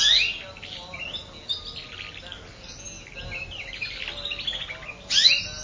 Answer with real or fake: real